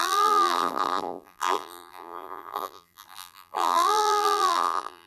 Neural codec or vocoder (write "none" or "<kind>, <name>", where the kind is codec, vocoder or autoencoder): vocoder, BigVGAN v2